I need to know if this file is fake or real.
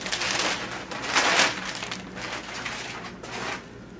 real